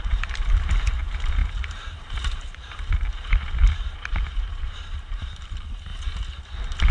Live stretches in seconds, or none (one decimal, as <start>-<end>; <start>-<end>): 5.9-6.9